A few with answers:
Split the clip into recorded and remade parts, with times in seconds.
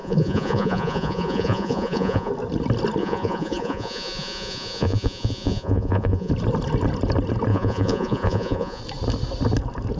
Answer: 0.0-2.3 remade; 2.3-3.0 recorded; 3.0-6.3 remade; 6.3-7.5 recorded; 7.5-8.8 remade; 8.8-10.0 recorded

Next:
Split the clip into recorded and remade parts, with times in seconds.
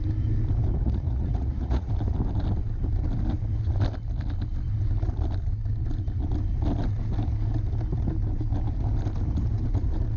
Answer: 0.0-0.8 recorded; 0.8-1.9 remade; 1.9-10.2 recorded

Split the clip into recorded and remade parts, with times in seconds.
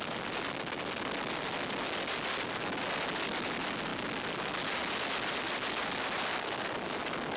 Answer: 0.0-7.4 recorded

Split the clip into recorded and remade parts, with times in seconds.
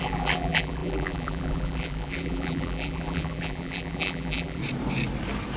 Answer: 0.0-4.6 remade; 4.6-5.6 recorded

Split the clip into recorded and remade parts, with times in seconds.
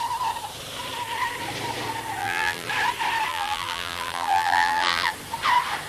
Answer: 0.0-2.2 recorded; 2.2-2.7 remade; 2.7-3.3 recorded; 3.3-5.1 remade; 5.1-5.9 recorded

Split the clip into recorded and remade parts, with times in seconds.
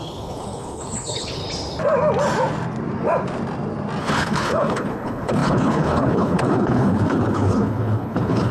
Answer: 0.0-1.4 remade; 1.4-4.0 recorded; 4.0-8.5 remade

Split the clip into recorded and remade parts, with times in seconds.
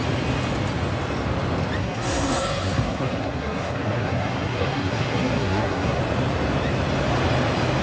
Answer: 0.0-1.8 recorded; 1.8-6.0 remade; 6.0-7.8 recorded